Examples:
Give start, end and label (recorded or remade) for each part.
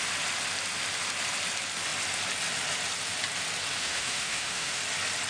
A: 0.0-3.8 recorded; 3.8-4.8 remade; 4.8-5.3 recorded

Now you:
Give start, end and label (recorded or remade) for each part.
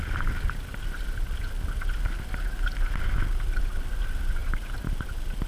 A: 0.0-5.5 recorded